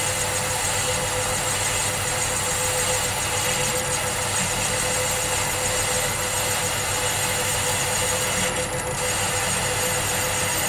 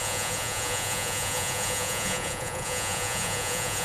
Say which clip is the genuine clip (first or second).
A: first